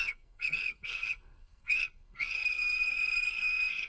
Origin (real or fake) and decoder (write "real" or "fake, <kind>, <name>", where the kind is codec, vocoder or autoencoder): fake, codec, SNAC